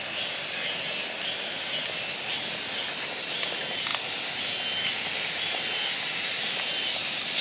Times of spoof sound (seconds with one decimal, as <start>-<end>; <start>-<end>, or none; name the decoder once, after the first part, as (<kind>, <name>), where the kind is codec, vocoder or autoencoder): none